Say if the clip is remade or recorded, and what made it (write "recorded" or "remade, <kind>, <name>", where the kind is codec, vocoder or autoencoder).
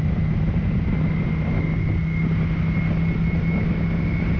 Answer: recorded